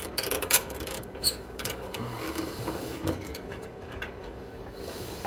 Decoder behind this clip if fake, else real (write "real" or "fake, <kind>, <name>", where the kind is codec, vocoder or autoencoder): fake, codec, DAC